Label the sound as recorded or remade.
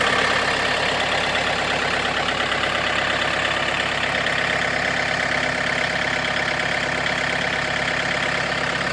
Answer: recorded